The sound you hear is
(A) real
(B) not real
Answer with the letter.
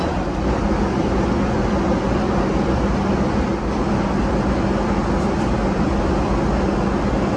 A